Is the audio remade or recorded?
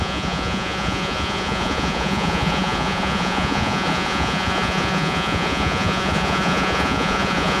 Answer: remade